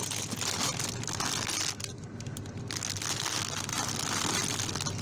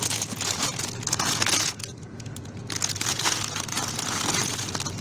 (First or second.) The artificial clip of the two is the second